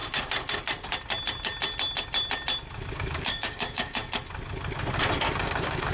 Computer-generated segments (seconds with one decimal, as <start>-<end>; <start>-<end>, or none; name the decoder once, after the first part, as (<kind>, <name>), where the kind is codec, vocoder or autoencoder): 2.9-4.0 (codec, DAC); 5.3-5.9